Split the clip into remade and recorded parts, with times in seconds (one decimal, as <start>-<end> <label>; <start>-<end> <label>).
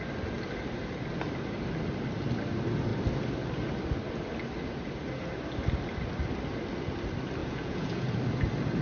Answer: 0.0-7.4 recorded; 7.4-8.1 remade; 8.1-8.8 recorded